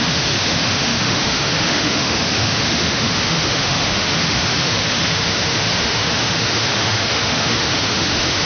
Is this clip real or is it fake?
fake